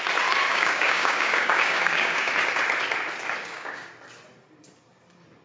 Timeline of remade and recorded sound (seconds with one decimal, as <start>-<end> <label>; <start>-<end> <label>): 0.0-0.5 recorded; 0.5-2.3 remade; 2.3-3.4 recorded; 3.4-3.9 remade; 3.9-5.4 recorded